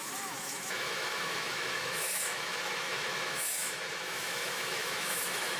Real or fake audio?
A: fake